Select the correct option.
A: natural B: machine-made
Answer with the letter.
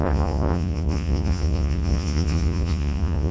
B